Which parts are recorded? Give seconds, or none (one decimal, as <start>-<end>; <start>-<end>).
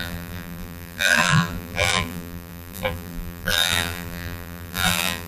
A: none